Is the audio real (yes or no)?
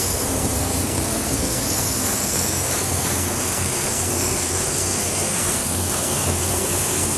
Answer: no